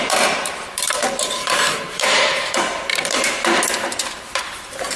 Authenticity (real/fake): fake